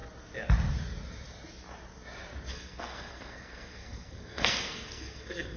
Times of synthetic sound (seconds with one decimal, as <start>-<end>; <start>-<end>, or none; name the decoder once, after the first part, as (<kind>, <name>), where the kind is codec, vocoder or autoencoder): 2.5-5.6 (codec, SNAC)